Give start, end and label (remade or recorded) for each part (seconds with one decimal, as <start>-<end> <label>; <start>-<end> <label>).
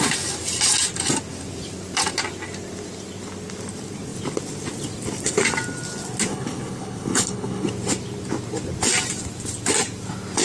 0.0-6.3 recorded; 6.3-7.7 remade; 7.7-10.4 recorded